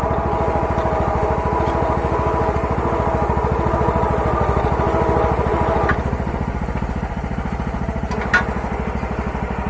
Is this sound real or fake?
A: real